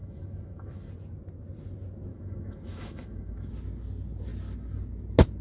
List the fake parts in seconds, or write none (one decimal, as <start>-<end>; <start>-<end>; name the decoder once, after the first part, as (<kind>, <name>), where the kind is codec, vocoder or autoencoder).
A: 0.0-0.9 (autoencoder, DAC-VAE); 2.1-3.5